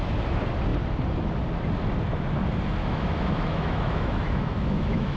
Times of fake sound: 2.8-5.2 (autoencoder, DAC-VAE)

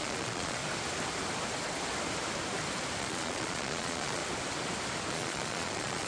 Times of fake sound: 0.0-0.6 (vocoder, Vocos); 3.0-4.2; 5.1-6.1

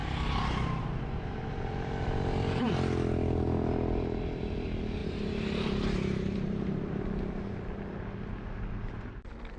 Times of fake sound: 0.0-2.7 (vocoder, BigVGAN v2); 5.0-7.0

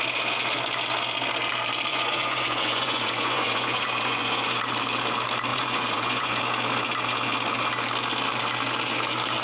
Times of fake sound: 1.9-4.4 (vocoder, Vocos); 5.5-6.4